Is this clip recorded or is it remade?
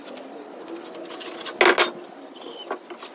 recorded